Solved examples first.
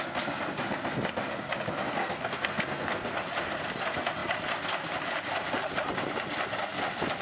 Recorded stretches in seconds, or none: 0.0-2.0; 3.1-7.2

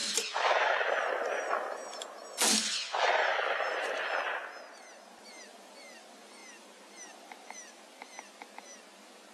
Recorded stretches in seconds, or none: 0.0-9.3

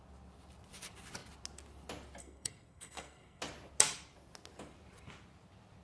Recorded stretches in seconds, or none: 0.0-2.2; 3.4-5.8

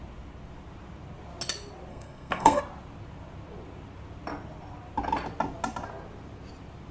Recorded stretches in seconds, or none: 0.0-1.9; 2.6-6.9

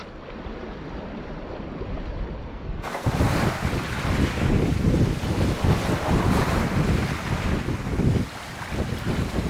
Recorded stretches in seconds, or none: 0.0-2.5; 3.1-9.5

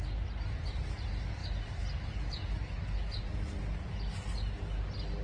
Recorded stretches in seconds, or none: 0.0-5.2

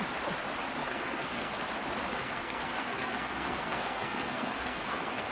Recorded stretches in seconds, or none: 0.0-0.8; 1.5-2.1

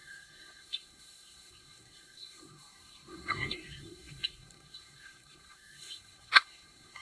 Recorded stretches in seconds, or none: none